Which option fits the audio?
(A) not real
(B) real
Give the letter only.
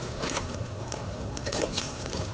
A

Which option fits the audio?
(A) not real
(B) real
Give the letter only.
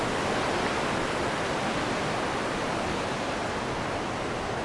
B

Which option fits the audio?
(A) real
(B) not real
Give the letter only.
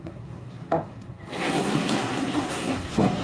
B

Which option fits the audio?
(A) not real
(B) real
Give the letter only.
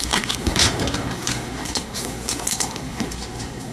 A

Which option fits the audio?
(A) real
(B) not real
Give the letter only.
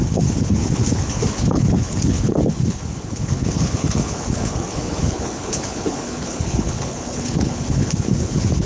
B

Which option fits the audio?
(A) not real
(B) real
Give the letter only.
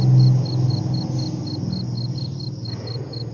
B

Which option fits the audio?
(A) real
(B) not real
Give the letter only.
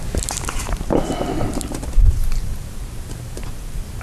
B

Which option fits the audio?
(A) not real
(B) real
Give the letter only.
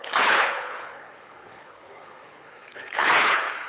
A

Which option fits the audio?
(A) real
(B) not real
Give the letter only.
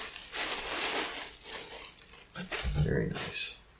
A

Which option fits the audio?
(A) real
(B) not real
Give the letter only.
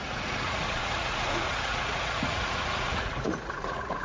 B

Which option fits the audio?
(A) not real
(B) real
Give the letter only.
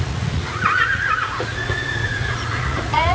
A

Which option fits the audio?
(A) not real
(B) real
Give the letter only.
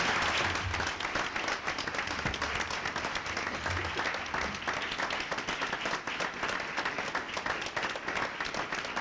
B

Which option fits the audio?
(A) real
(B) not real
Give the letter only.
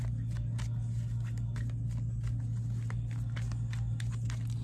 A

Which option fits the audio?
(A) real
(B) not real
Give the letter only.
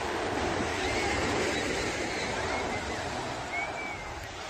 A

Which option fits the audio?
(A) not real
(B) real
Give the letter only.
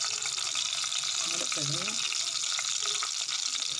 B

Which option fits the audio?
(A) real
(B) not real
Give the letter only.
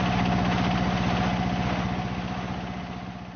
A